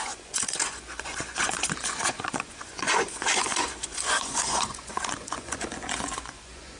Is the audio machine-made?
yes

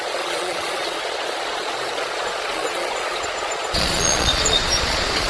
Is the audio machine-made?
yes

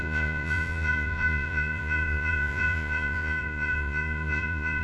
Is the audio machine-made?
yes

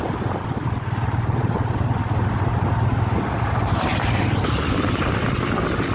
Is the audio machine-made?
no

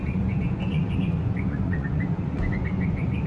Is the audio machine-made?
yes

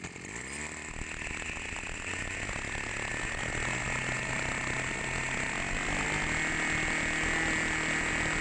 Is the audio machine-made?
no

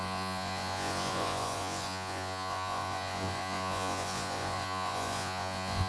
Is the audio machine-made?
yes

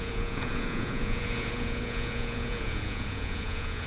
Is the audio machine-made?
yes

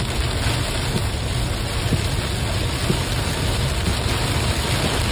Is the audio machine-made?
no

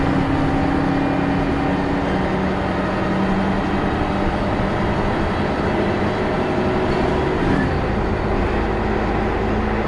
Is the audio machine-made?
no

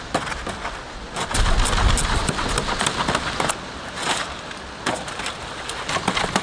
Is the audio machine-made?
no